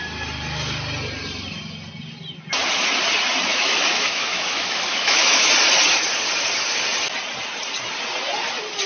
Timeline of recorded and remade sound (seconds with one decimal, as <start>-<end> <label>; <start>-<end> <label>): 0.0-3.5 recorded; 3.5-5.5 remade; 5.5-8.9 recorded